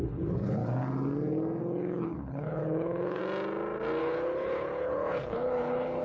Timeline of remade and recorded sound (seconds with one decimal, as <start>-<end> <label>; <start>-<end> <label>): 0.0-0.6 remade; 0.6-1.6 recorded; 1.6-3.2 remade; 3.2-4.0 recorded; 4.0-6.0 remade